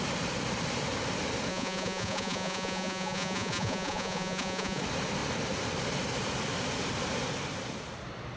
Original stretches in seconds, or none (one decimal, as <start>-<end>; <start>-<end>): 0.0-1.5; 4.8-8.4